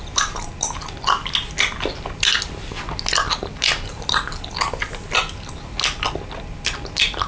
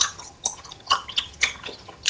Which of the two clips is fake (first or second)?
second